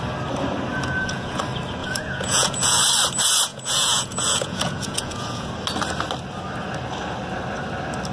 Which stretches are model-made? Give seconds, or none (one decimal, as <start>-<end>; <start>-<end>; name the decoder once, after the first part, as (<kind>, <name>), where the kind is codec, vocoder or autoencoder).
0.7-1.4 (vocoder, Vocos); 1.8-2.8; 3.5-5.5